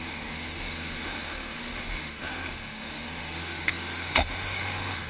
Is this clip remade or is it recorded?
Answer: remade